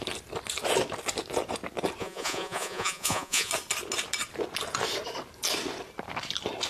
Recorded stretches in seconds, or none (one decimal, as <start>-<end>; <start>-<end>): 0.0-2.0; 3.5-6.7

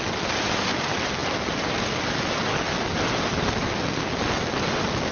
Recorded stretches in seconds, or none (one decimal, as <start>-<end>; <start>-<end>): 0.0-5.1

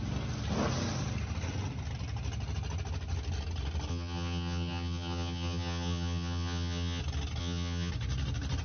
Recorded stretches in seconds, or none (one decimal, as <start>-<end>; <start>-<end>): 0.0-3.9; 7.0-7.4; 7.9-8.6

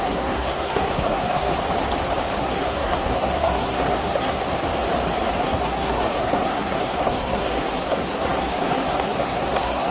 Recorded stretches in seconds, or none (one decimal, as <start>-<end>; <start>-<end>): 1.5-2.4; 4.7-5.4

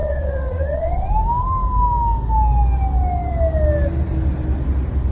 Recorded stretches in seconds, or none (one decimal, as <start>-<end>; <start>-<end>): 1.1-5.1